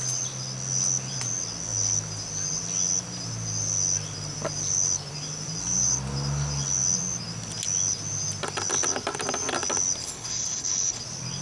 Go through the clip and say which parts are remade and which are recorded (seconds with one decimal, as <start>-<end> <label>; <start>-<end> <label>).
0.0-10.0 recorded; 10.0-11.0 remade; 11.0-11.4 recorded